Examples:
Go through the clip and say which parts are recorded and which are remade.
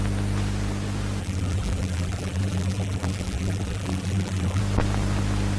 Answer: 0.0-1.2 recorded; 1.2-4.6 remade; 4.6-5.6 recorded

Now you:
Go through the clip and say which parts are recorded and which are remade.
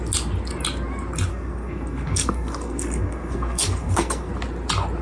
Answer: 0.0-1.3 recorded; 1.3-4.3 remade; 4.3-5.0 recorded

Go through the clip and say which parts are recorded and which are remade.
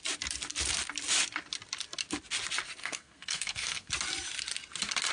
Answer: 0.0-2.8 recorded; 2.8-3.9 remade; 3.9-5.1 recorded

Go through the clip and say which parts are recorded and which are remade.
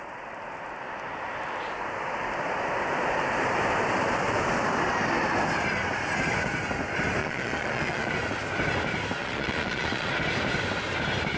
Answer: 0.0-7.2 recorded; 7.2-8.1 remade; 8.1-9.2 recorded; 9.2-10.1 remade; 10.1-11.4 recorded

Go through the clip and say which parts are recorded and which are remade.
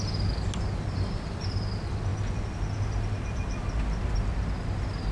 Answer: 0.0-5.1 recorded